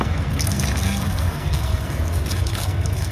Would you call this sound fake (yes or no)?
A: yes